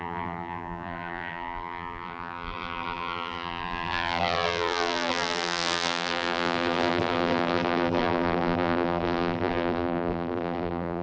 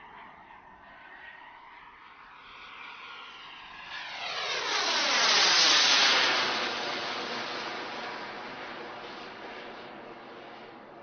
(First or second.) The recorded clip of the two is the second